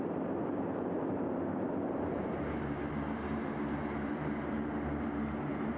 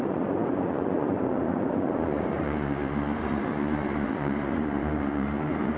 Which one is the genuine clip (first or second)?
first